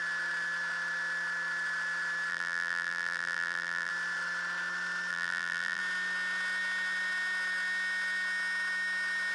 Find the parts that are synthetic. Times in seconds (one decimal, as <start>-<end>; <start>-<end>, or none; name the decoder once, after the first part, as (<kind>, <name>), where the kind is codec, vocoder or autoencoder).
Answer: 2.3-3.9 (vocoder, BigVGAN v2); 5.1-5.8